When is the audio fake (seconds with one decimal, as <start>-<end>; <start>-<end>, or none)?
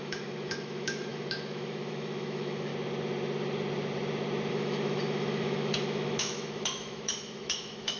0.0-2.7; 4.5-8.0